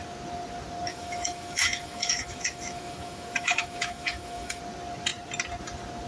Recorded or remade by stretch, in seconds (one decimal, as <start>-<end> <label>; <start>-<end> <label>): 0.0-0.9 recorded; 0.9-4.6 remade; 4.6-6.1 recorded